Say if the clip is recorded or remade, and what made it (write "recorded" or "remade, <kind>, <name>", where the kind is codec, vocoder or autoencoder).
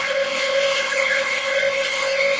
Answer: remade, codec, ZipCodec